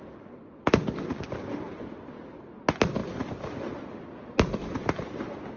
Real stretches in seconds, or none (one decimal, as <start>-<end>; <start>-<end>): 0.0-5.6